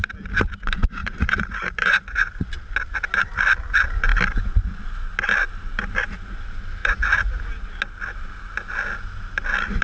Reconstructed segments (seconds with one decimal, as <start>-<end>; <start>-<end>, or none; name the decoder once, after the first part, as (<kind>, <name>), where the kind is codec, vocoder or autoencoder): 1.0-2.5 (vocoder, Vocos); 6.8-7.4